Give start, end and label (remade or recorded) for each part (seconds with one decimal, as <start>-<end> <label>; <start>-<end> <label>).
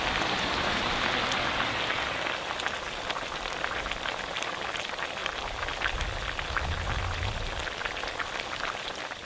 0.0-9.2 recorded